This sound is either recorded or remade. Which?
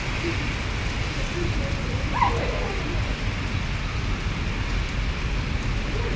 recorded